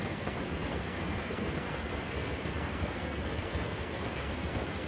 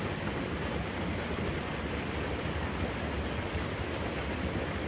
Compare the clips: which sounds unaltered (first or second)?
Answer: second